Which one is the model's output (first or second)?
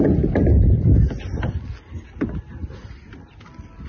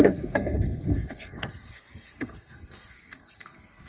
second